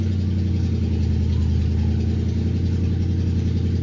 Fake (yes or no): no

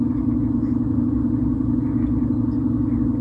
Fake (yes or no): no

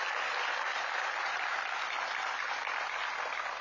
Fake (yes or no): no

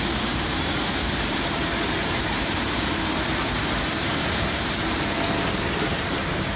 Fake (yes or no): yes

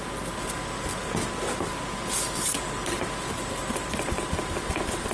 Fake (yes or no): no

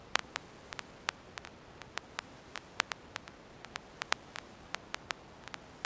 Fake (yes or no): no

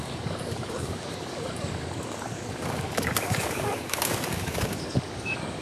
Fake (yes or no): yes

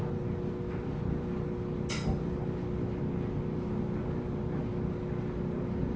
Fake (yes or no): no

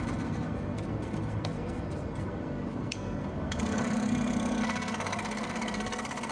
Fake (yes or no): yes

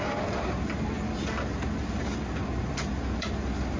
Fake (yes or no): no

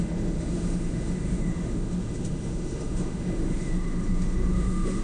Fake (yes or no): yes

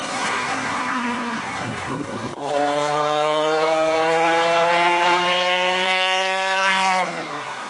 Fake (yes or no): yes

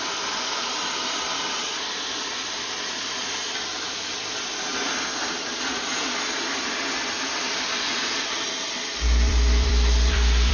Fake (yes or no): yes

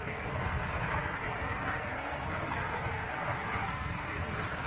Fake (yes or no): yes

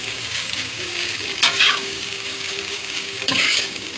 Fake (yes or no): yes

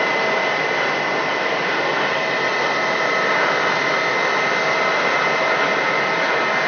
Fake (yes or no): no